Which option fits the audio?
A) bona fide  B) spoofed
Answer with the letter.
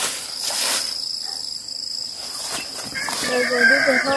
A